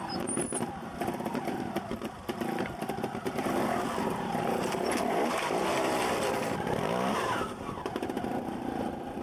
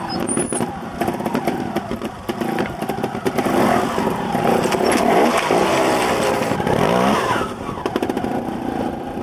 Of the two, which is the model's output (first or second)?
first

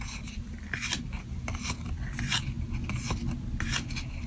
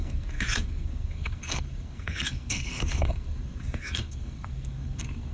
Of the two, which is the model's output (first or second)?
second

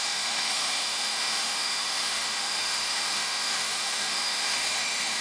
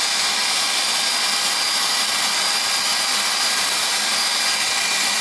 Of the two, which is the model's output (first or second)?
first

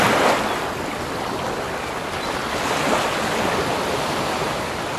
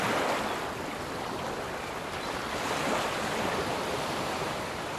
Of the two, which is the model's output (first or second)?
second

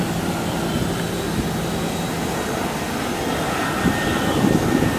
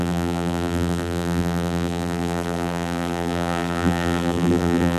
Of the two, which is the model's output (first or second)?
second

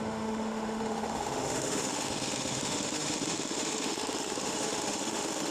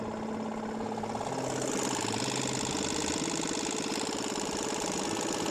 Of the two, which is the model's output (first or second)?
first